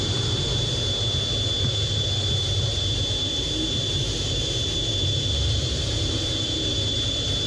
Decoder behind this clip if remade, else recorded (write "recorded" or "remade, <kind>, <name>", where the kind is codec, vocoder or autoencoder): recorded